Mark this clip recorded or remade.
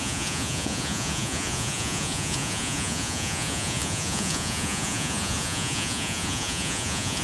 remade